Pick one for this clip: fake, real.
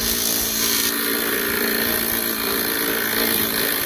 fake